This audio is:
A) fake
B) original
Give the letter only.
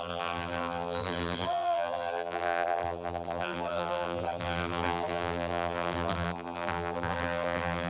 A